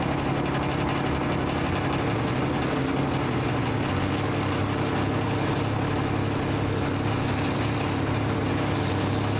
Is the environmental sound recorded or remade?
recorded